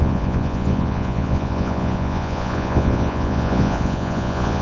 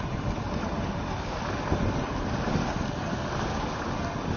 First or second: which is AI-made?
first